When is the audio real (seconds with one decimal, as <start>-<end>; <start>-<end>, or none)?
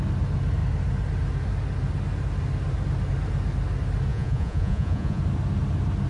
0.0-4.1; 5.2-6.1